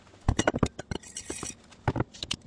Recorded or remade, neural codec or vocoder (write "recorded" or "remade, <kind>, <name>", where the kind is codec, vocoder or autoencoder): recorded